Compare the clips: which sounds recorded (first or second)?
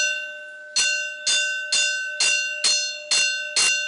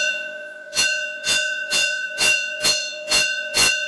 first